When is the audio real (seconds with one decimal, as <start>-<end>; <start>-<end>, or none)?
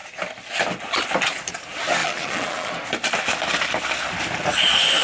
0.0-2.0; 2.7-5.0